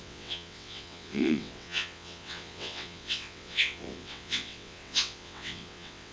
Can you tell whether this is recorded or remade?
remade